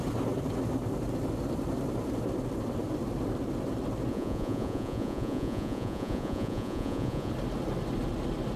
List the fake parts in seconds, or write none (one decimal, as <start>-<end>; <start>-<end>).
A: 4.1-7.3